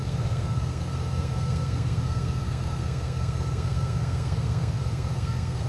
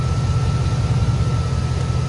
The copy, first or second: first